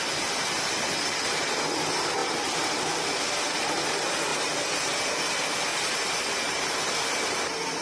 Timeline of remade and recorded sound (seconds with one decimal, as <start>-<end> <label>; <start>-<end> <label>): 0.0-4.3 recorded; 4.3-5.0 remade; 5.0-5.7 recorded; 5.7-6.8 remade; 6.8-7.8 recorded